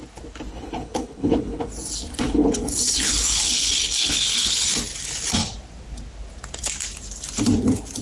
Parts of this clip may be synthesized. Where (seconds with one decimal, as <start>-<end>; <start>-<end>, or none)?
0.5-1.7; 2.1-4.7